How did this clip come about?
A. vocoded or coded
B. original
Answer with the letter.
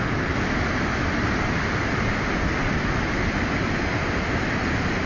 B